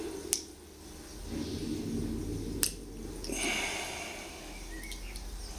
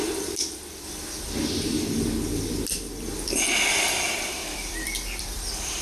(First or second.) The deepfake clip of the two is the second